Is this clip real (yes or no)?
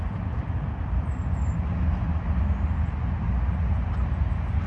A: yes